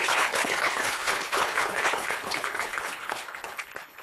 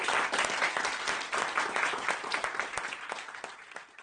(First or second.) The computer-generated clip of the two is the first